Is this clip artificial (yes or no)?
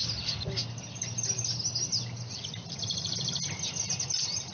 no